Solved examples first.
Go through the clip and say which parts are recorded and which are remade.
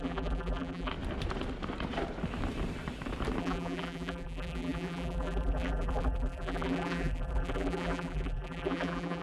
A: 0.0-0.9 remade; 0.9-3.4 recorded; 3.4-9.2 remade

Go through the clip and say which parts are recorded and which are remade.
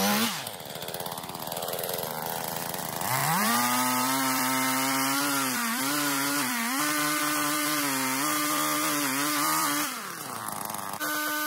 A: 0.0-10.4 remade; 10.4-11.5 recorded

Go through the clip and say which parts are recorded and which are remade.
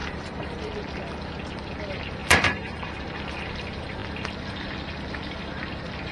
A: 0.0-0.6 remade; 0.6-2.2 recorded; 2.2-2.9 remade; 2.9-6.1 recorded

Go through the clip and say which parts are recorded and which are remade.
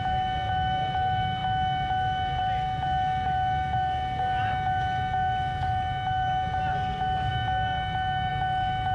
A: 0.0-8.9 recorded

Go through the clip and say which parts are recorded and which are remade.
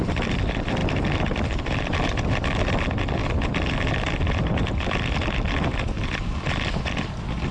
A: 0.0-3.2 remade; 3.2-4.2 recorded; 4.2-7.5 remade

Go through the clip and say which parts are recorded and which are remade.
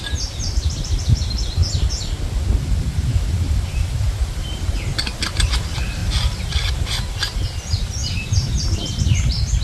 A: 0.0-8.0 recorded; 8.0-8.9 remade; 8.9-9.6 recorded